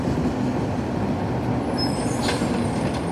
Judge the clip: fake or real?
real